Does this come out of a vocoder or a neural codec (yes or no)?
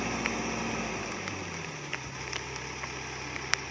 no